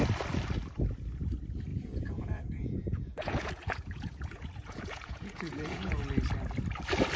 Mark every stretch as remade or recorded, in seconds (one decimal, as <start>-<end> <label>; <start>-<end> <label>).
0.0-1.7 recorded; 1.7-6.0 remade; 6.0-7.2 recorded